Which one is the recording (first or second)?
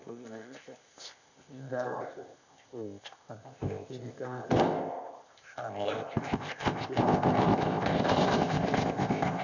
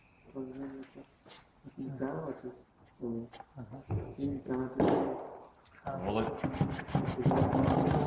second